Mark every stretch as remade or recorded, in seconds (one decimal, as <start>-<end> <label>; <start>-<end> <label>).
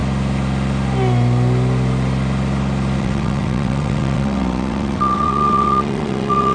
0.0-3.0 recorded; 3.0-6.5 remade